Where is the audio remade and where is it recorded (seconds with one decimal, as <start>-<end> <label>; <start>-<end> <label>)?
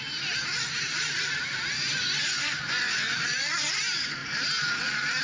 0.0-1.9 recorded; 1.9-3.8 remade; 3.8-5.2 recorded